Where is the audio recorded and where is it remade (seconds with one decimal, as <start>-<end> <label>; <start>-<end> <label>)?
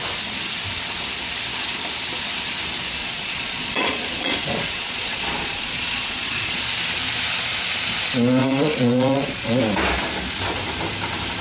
0.0-3.0 recorded; 3.0-6.6 remade; 6.6-8.4 recorded; 8.4-9.6 remade; 9.6-11.4 recorded